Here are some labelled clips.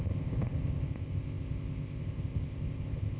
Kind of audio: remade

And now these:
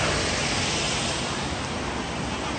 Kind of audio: recorded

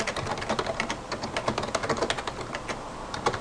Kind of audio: recorded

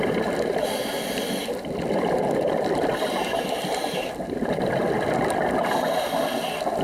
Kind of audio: recorded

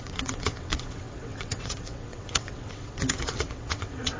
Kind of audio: remade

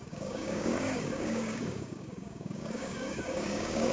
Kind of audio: remade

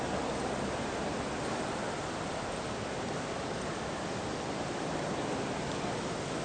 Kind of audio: recorded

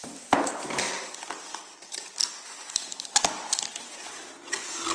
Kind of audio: recorded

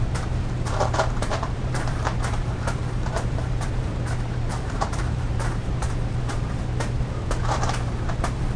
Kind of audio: remade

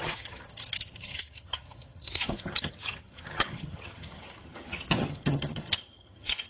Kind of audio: remade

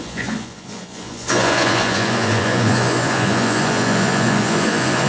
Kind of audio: remade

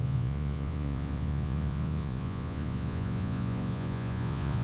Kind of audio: remade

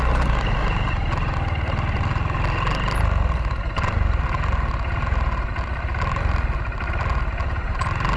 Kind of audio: recorded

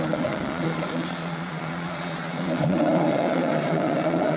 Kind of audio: remade